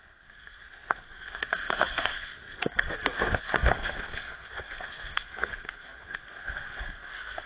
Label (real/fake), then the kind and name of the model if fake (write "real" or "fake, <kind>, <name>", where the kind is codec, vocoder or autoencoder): fake, codec, SNAC